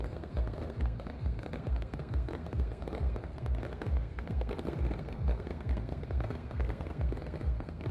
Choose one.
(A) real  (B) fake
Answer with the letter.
B